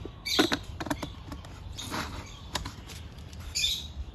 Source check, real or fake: fake